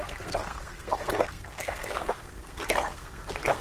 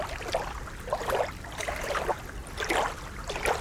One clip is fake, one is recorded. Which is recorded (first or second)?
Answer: second